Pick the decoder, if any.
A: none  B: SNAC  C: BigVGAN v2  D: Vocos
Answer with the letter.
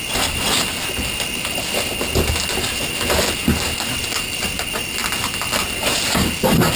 A